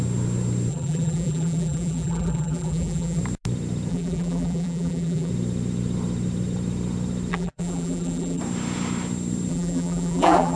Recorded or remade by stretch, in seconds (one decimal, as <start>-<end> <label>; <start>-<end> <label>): 0.0-0.7 recorded; 0.7-3.2 remade; 3.2-3.9 recorded; 3.9-5.3 remade; 5.3-7.3 recorded; 7.3-8.4 remade; 8.4-9.5 recorded; 9.5-10.6 remade